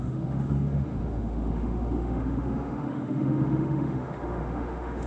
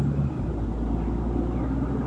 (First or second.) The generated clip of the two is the first